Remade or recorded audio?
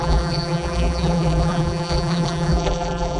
remade